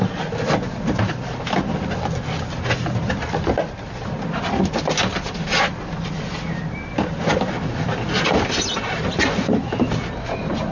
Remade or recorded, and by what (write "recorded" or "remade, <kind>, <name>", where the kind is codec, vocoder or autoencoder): recorded